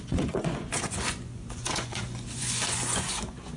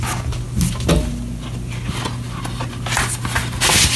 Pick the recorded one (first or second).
second